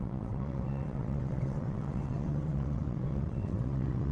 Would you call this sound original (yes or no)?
no